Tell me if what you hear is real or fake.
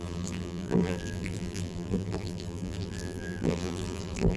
fake